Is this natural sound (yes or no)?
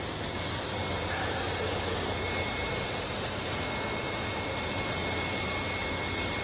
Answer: yes